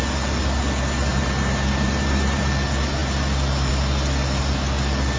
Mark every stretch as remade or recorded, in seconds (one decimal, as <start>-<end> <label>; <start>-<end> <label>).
0.0-1.1 recorded; 1.1-2.5 remade; 2.5-5.2 recorded